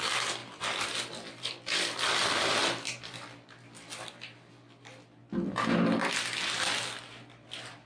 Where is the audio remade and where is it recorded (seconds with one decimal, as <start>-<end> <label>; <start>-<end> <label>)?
0.0-5.2 remade; 5.2-7.9 recorded